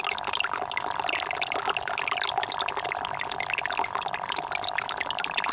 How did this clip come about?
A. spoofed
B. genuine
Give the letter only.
B